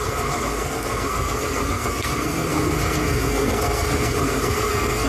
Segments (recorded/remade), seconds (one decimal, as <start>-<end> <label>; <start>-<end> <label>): 0.0-5.1 remade